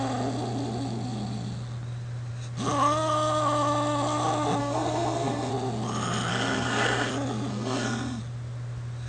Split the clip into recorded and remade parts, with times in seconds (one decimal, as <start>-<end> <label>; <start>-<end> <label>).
0.0-4.6 recorded; 4.6-5.5 remade; 5.5-6.3 recorded; 6.3-7.1 remade; 7.1-7.5 recorded; 7.5-8.2 remade; 8.2-9.1 recorded

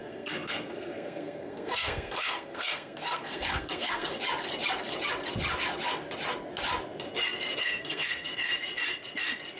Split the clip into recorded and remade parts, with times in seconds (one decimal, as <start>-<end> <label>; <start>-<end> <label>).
0.0-4.2 remade; 4.2-7.6 recorded; 7.6-8.5 remade; 8.5-9.6 recorded

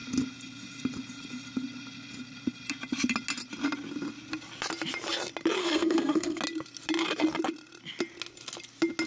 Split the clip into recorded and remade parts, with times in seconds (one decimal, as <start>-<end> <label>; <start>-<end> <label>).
0.0-5.6 recorded; 5.6-6.4 remade; 6.4-9.1 recorded

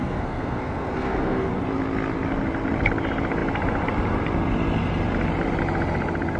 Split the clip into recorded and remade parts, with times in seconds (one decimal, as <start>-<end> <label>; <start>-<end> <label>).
0.0-1.5 remade; 1.5-6.4 recorded

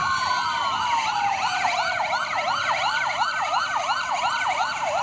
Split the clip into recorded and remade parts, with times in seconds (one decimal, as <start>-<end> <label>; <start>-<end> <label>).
0.0-5.0 recorded

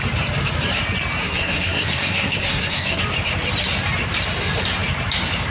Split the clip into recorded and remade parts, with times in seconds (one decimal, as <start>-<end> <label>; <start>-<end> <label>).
0.0-1.2 recorded; 1.2-3.0 remade; 3.0-5.5 recorded